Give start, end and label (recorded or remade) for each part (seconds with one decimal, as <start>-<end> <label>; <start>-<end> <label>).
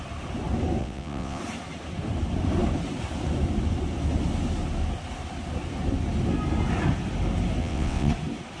0.0-0.8 recorded; 0.8-1.4 remade; 1.4-7.6 recorded; 7.6-8.1 remade; 8.1-8.6 recorded